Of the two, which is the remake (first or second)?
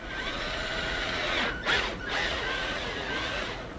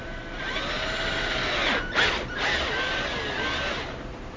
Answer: first